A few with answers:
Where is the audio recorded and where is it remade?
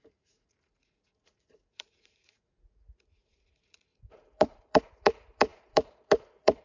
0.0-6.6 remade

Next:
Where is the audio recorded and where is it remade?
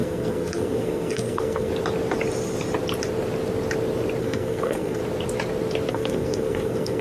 0.0-1.7 remade; 1.7-4.2 recorded; 4.2-5.0 remade; 5.0-5.9 recorded; 5.9-7.0 remade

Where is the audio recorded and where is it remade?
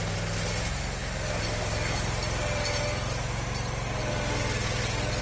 0.0-5.2 recorded